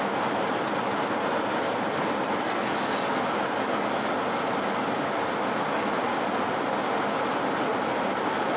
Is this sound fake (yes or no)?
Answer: no